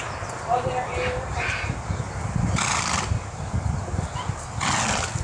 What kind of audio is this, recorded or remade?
recorded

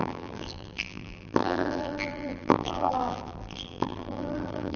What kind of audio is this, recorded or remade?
remade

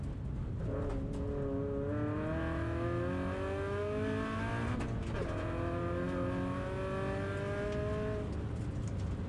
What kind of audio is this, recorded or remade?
recorded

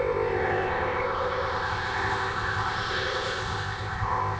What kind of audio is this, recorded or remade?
remade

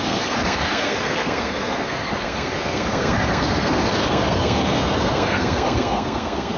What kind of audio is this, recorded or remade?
remade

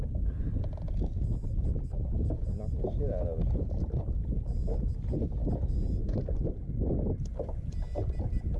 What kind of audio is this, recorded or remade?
recorded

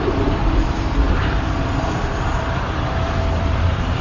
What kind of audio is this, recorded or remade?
remade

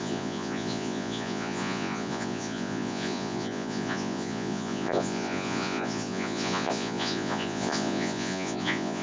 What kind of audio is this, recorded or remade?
remade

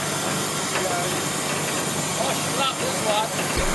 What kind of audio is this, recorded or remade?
recorded